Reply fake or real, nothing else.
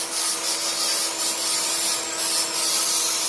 real